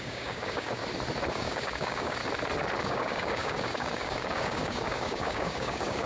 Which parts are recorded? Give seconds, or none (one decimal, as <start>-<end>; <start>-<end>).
0.8-1.3; 2.2-2.8